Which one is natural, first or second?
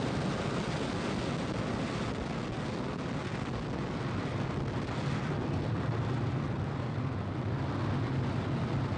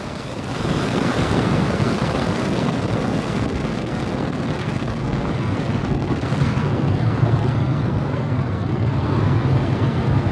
first